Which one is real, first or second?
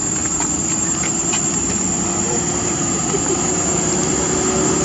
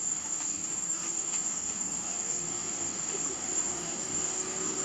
first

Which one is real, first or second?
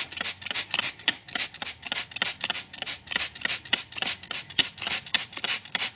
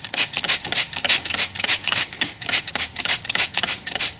first